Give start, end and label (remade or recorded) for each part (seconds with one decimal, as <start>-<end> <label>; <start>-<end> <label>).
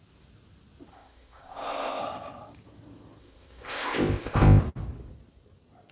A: 0.0-0.9 recorded; 0.9-2.0 remade; 2.0-3.2 recorded; 3.2-4.6 remade; 4.6-5.9 recorded